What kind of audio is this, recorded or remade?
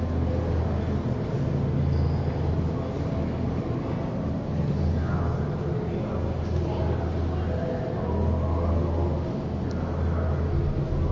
recorded